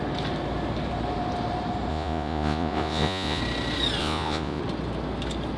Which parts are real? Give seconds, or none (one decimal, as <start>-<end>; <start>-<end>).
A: 0.0-1.9; 3.4-4.0; 4.6-5.6